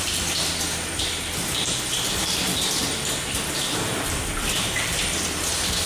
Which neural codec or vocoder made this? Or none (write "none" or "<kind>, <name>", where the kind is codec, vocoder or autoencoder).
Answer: vocoder, BigVGAN v2